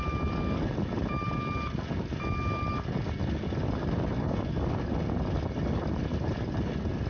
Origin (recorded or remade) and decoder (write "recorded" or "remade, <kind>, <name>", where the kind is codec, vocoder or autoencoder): recorded